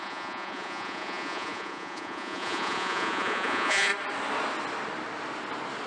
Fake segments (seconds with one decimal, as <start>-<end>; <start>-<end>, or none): 0.0-3.9